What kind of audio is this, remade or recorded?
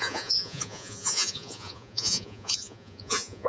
remade